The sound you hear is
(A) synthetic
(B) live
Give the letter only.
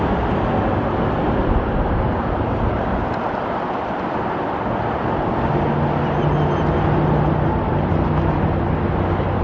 B